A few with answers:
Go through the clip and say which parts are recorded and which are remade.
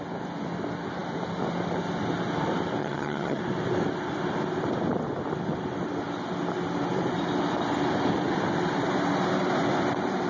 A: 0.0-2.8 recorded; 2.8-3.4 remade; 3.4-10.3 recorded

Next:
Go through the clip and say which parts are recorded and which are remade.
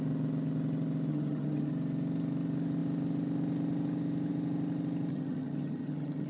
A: 0.0-1.1 recorded; 1.1-1.7 remade; 1.7-5.1 recorded; 5.1-6.3 remade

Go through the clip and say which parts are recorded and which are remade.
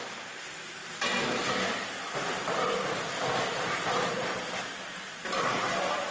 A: 0.0-6.1 recorded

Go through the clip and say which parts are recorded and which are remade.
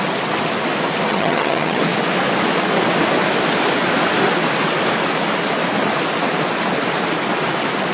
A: 0.0-1.1 recorded; 1.1-1.8 remade; 1.8-7.9 recorded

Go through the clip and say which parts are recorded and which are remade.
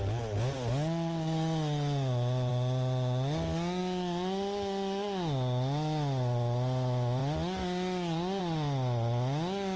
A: 0.0-9.8 recorded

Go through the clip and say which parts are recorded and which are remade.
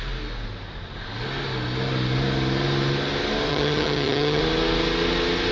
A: 0.0-3.5 recorded; 3.5-4.4 remade; 4.4-5.5 recorded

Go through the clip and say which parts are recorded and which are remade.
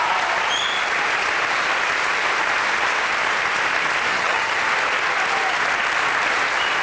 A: 0.0-4.1 recorded; 4.1-4.6 remade; 4.6-6.8 recorded